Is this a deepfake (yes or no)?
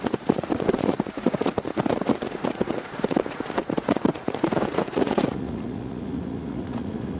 yes